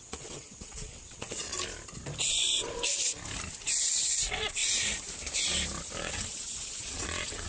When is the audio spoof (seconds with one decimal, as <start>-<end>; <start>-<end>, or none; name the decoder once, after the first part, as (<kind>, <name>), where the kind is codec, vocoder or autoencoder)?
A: 0.0-1.5 (vocoder, WaveNeXt); 3.8-4.6; 6.0-7.5